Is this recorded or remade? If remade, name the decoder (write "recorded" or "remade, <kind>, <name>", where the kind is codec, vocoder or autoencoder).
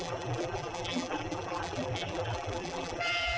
remade, vocoder, BigVGAN v2